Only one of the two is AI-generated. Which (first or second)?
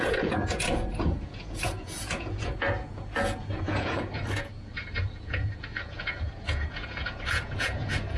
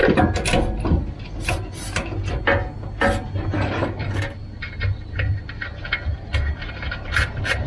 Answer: first